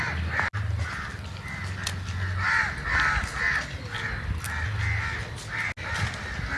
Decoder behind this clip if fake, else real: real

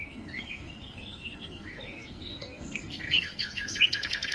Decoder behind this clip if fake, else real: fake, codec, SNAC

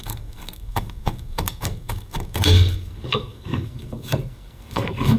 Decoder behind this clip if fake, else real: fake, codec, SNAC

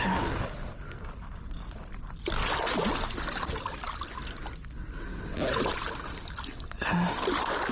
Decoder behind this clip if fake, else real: real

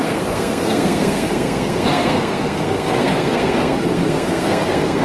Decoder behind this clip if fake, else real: fake, codec, SNAC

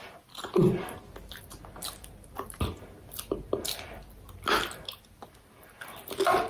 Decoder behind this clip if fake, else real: real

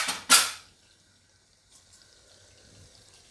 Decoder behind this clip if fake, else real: real